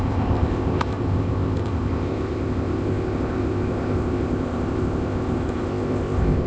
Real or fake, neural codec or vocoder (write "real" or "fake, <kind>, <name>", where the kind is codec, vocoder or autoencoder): fake, codec, ZipCodec